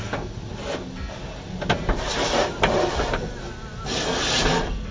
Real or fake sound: real